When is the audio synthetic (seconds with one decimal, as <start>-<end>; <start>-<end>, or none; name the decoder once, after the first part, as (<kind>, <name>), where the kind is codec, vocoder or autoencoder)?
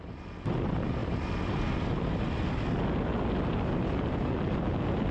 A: none